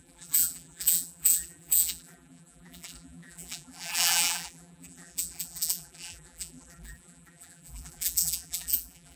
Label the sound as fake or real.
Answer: fake